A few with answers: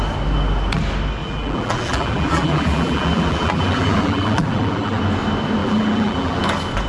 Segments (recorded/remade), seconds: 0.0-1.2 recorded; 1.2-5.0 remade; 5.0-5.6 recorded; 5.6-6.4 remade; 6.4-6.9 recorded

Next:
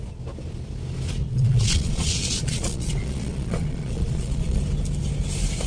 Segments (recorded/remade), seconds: 0.0-1.2 recorded; 1.2-4.6 remade; 4.6-5.7 recorded

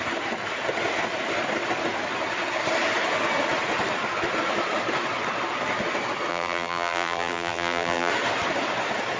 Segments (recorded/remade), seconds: 0.0-6.3 recorded; 6.3-8.1 remade; 8.1-9.2 recorded

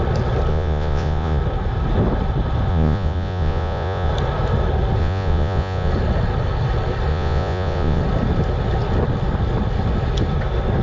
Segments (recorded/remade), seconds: 0.0-0.5 recorded; 0.5-1.4 remade; 1.4-2.7 recorded; 2.7-4.1 remade; 4.1-5.0 recorded; 5.0-5.9 remade; 5.9-7.1 recorded; 7.1-8.0 remade; 8.0-10.8 recorded